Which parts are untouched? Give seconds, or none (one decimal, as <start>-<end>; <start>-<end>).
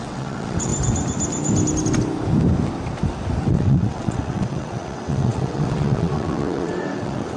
0.7-3.5